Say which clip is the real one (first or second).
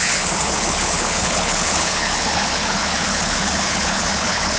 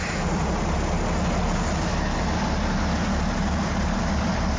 second